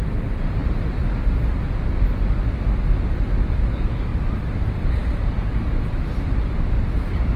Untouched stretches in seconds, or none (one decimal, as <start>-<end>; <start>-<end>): 0.0-0.6; 1.2-7.4

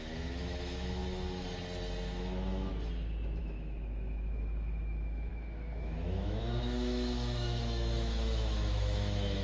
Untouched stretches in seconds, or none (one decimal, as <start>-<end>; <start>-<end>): 1.0-2.2; 2.7-3.4